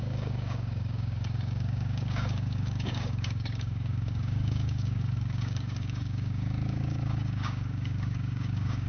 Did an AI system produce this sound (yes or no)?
yes